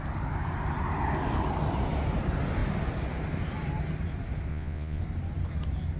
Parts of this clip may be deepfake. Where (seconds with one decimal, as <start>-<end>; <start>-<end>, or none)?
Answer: 4.5-5.0